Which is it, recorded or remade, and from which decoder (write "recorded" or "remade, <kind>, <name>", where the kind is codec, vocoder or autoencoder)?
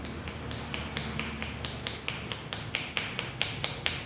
recorded